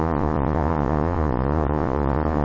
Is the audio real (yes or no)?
no